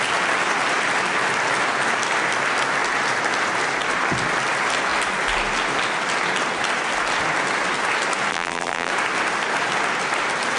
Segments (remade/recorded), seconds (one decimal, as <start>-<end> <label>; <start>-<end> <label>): 0.0-8.3 recorded; 8.3-8.9 remade; 8.9-10.6 recorded